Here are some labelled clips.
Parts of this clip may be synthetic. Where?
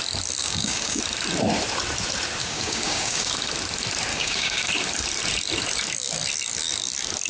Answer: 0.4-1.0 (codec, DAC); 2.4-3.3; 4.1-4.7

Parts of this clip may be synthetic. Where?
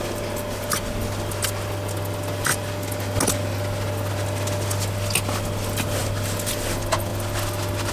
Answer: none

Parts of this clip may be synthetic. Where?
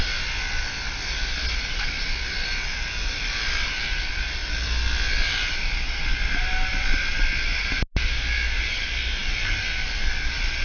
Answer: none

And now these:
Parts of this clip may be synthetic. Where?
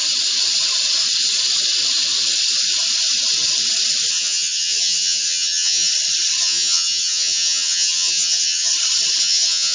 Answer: 4.1-5.9 (vocoder, HiFi-GAN); 6.4-8.7; 9.2-9.7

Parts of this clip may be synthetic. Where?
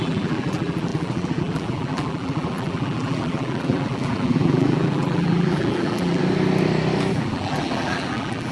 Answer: 0.0-6.2 (vocoder, BigVGAN v2); 7.1-8.5